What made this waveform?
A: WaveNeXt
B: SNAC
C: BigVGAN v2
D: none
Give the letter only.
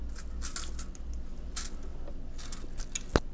D